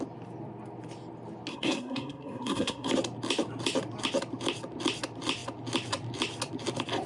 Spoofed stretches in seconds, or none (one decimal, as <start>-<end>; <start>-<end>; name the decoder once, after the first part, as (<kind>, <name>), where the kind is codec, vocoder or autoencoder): 1.5-2.9 (codec, SNAC)